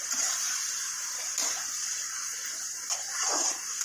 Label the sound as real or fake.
fake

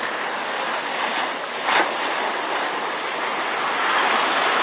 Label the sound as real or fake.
real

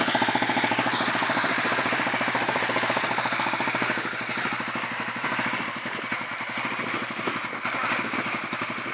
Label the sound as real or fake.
fake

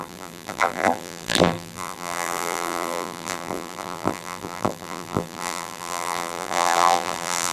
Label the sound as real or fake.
fake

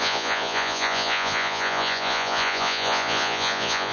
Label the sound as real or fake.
fake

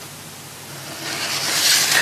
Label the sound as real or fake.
real